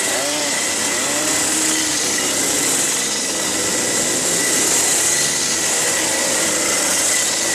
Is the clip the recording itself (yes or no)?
yes